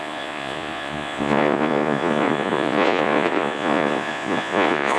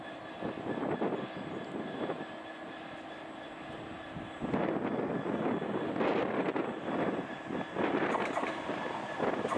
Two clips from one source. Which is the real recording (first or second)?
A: second